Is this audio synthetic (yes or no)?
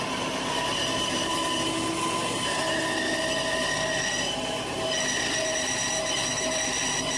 no